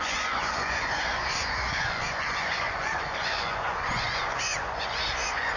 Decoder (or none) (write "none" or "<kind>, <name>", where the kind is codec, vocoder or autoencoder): vocoder, Vocos